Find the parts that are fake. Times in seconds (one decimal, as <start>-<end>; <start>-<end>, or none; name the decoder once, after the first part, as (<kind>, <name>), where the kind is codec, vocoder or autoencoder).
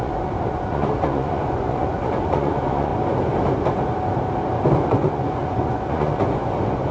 0.0-2.9 (vocoder, Vocos); 4.7-6.9